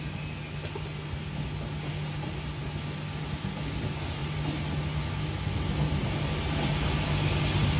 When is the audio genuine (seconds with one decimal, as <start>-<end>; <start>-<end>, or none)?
0.0-7.8